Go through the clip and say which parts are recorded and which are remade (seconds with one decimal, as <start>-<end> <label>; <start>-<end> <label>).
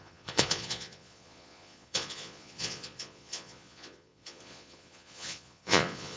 0.0-6.2 remade